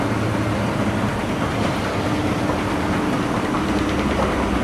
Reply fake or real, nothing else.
real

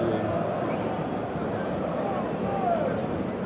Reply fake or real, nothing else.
real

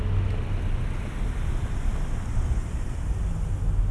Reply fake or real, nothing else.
real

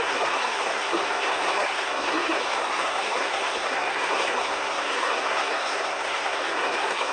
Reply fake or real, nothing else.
fake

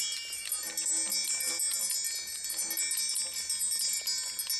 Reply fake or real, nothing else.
real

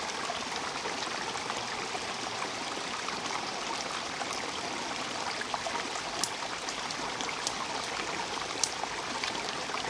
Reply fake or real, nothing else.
real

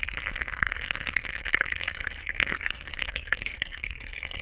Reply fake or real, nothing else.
fake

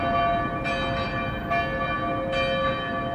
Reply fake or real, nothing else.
real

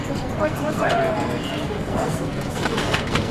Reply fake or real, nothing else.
fake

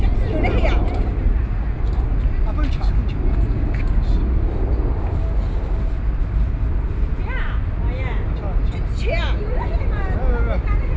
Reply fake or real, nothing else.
real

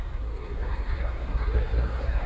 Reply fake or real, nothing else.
fake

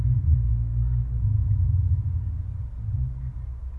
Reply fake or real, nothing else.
real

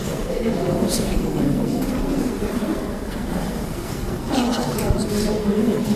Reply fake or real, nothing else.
fake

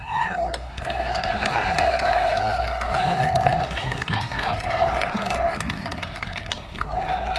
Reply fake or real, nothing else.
fake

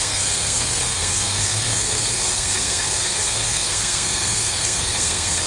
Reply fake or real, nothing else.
fake